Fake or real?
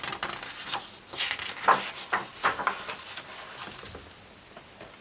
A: real